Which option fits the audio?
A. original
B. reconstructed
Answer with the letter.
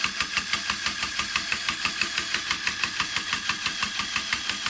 A